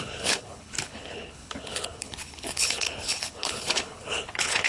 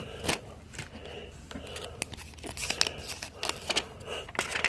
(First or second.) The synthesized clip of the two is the first